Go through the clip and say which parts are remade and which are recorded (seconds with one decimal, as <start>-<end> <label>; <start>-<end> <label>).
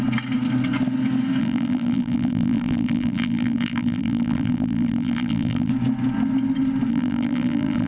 0.0-1.4 recorded; 1.4-5.7 remade; 5.7-6.9 recorded; 6.9-7.9 remade